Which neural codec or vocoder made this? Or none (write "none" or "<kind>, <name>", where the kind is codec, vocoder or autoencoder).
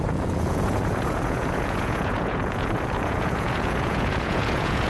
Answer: vocoder, Vocos